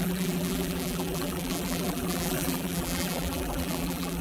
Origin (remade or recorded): remade